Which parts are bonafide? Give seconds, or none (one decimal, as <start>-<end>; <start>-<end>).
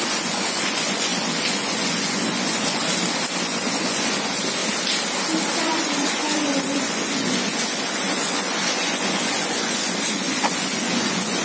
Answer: 2.8-3.4; 4.6-5.6